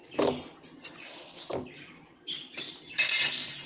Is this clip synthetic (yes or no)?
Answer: no